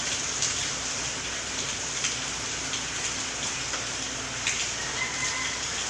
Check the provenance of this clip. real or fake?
real